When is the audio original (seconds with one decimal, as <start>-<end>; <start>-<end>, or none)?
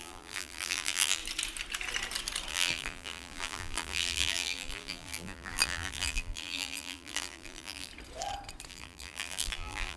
1.2-2.5; 7.9-8.7